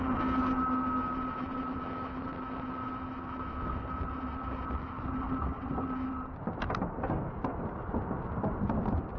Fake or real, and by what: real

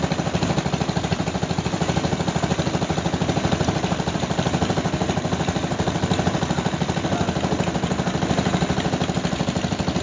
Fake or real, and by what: real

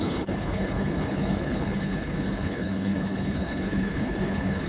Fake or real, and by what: fake, codec, HILCodec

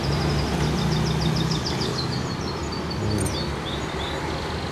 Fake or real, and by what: real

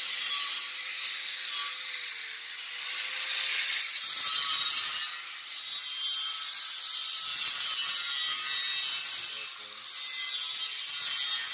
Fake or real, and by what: real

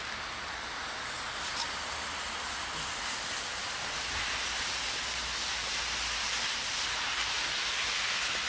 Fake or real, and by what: real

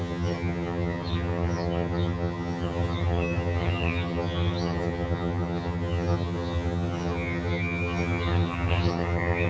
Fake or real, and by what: fake, vocoder, HiFi-GAN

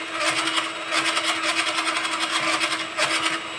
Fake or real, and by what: real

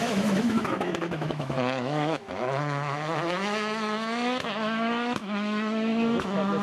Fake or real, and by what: fake, autoencoder, DAC-VAE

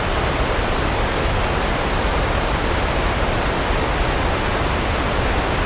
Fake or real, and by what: real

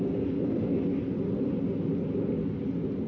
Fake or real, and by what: real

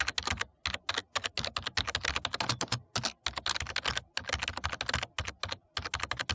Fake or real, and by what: real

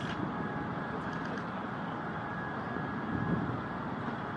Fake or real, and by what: real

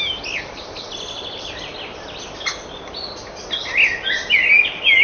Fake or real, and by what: real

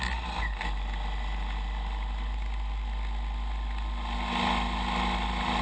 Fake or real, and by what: real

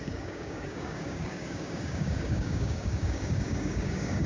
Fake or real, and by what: fake, codec, DAC